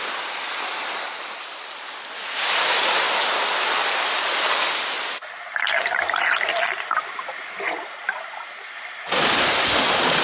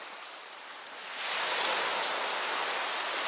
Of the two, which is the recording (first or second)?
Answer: second